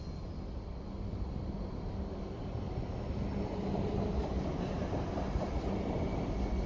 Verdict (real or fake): real